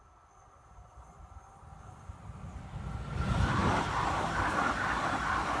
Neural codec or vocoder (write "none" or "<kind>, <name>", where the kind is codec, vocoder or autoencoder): none